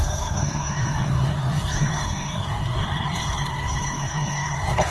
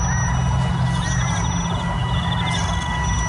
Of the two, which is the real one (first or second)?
second